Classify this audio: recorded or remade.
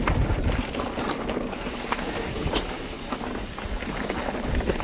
recorded